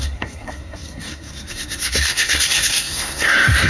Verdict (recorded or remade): remade